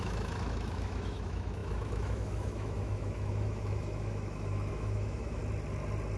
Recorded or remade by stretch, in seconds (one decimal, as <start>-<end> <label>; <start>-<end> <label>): 0.0-5.4 remade; 5.4-6.2 recorded